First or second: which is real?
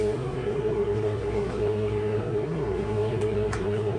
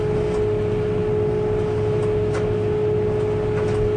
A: second